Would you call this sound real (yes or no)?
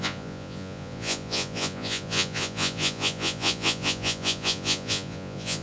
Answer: no